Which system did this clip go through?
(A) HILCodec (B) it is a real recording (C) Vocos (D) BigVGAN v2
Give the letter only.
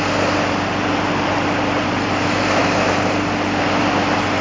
B